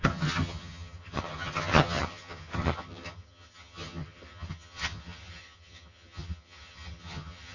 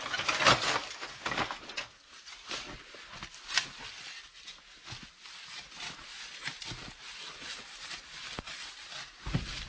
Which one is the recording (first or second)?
second